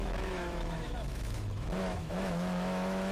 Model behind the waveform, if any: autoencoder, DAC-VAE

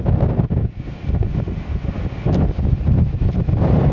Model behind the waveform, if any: none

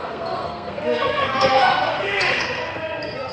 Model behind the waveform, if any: codec, SNAC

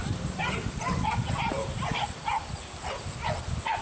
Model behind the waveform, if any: none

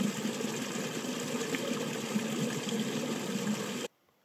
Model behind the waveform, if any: none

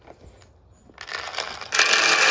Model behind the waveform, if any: none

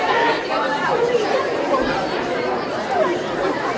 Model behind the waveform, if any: vocoder, BigVGAN v2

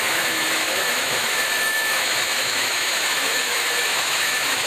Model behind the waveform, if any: autoencoder, DAC-VAE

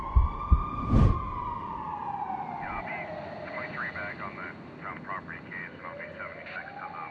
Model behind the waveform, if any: none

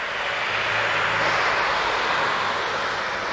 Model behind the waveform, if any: none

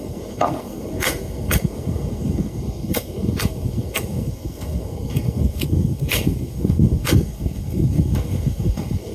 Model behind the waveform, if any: codec, SNAC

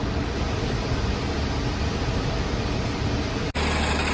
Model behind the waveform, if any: none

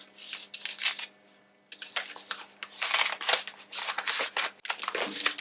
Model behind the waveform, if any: none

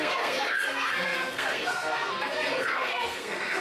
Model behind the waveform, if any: codec, SNAC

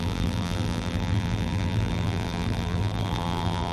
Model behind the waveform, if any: vocoder, BigVGAN v2